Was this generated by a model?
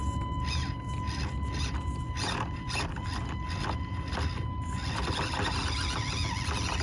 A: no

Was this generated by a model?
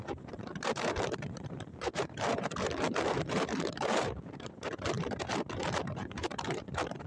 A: yes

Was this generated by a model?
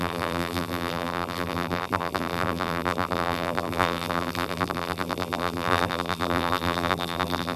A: yes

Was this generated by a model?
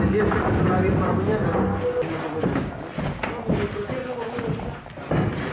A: no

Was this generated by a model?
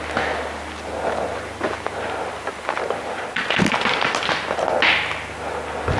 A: no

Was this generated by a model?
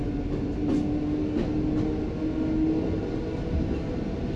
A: no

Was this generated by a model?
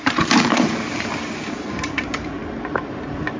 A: yes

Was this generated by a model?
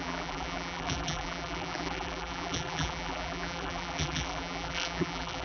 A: yes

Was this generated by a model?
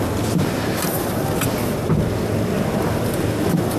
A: no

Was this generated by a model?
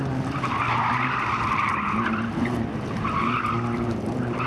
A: no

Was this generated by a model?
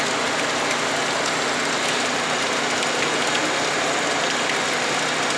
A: no